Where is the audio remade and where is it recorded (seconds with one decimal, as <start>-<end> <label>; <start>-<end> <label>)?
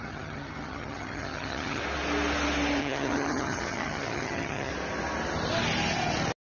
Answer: 0.0-1.8 remade; 1.8-2.8 recorded; 2.8-4.7 remade; 4.7-6.5 recorded